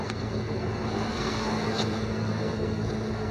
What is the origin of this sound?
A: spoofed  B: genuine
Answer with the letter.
A